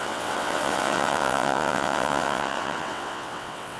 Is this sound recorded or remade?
remade